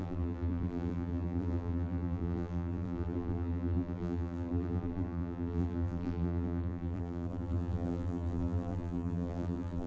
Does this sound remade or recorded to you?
remade